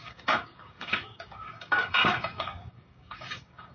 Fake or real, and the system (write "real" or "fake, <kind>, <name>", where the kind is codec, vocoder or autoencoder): fake, codec, DAC